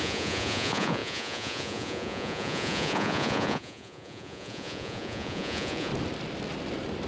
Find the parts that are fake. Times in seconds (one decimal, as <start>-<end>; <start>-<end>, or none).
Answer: 0.0-5.9